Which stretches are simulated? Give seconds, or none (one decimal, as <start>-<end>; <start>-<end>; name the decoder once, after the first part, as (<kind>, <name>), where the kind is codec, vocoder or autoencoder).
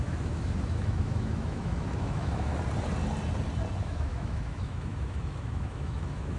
0.0-2.5 (autoencoder, DAC-VAE); 3.8-6.4